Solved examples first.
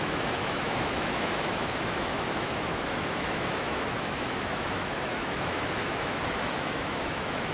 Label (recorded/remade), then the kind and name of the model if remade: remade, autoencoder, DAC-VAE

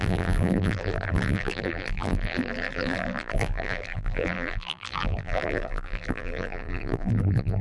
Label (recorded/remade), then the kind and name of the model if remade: remade, vocoder, BigVGAN v2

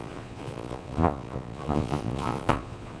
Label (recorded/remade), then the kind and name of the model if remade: remade, vocoder, Vocos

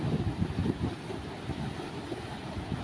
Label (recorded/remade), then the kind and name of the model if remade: recorded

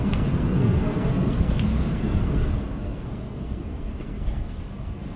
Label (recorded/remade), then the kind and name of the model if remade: remade, codec, SNAC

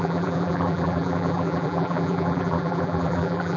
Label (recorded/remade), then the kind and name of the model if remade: remade, vocoder, BigVGAN v2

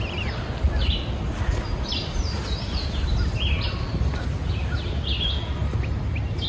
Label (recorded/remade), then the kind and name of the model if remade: recorded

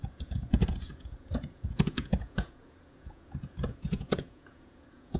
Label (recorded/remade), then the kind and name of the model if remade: remade, vocoder, Vocos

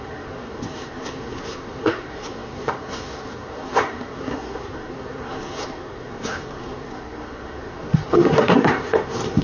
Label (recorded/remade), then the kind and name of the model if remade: remade, codec, SNAC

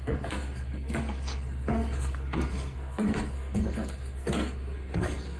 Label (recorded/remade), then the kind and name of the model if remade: remade, codec, SNAC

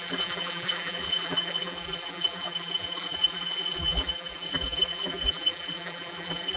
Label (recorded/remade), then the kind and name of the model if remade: remade, vocoder, BigVGAN v2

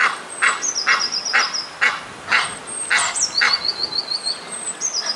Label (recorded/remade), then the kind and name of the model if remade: recorded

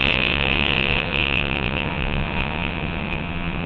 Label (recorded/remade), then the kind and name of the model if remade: remade, vocoder, WaveNeXt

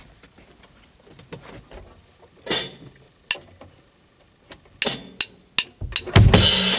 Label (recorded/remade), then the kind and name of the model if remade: recorded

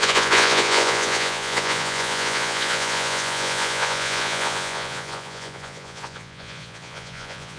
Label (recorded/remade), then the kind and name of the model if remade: remade, vocoder, Vocos